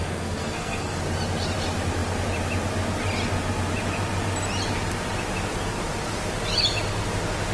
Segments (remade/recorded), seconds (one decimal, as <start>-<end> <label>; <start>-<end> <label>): 0.0-1.0 remade; 1.0-7.5 recorded